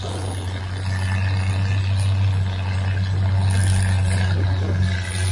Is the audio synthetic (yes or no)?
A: no